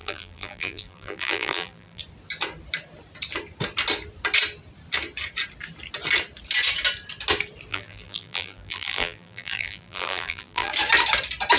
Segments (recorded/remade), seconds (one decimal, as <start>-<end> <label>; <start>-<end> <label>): 0.0-2.0 remade; 2.0-7.7 recorded; 7.7-10.7 remade; 10.7-11.6 recorded